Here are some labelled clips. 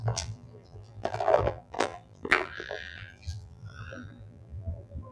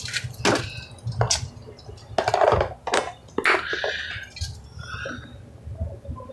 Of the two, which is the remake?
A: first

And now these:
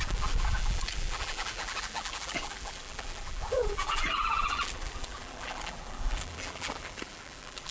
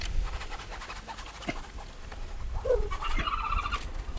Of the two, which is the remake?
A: first